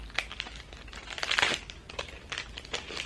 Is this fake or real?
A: real